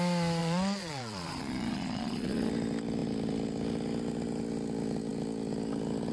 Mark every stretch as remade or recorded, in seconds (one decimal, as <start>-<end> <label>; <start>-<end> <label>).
0.0-0.4 recorded; 0.4-2.5 remade; 2.5-6.1 recorded